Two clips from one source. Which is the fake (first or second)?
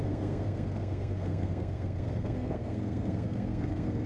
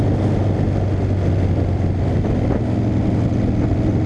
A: first